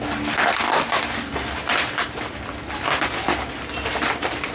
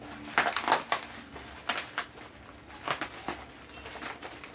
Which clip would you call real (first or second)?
second